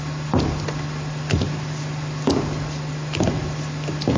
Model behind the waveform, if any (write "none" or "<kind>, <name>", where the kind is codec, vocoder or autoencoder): none